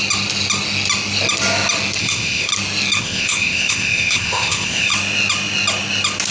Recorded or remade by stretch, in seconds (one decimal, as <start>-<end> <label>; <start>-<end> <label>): 0.0-2.0 recorded; 2.0-2.5 remade; 2.5-3.0 recorded; 3.0-4.9 remade; 4.9-6.3 recorded